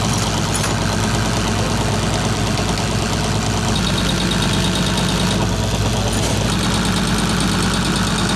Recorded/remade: recorded